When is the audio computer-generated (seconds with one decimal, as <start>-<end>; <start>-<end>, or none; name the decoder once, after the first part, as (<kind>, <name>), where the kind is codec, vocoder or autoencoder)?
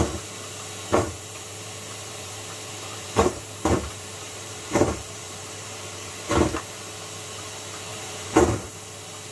0.9-6.1 (vocoder, BigVGAN v2); 7.9-8.4